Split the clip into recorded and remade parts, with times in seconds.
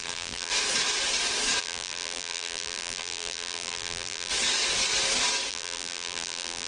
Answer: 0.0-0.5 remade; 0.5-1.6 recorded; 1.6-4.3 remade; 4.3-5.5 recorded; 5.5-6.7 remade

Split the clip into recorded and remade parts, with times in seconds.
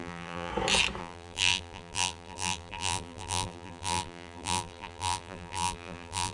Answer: 0.0-0.5 remade; 0.5-1.0 recorded; 1.0-6.3 remade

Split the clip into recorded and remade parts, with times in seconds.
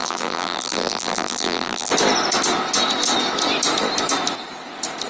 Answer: 0.0-1.9 remade; 1.9-5.1 recorded